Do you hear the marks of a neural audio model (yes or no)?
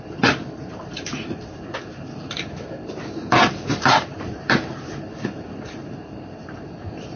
yes